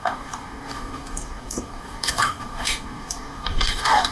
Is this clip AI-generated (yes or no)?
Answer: yes